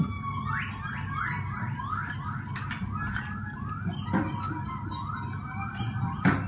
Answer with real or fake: real